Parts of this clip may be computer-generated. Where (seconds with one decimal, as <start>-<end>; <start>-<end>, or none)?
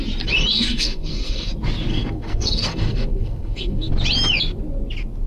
0.5-1.5; 1.9-3.9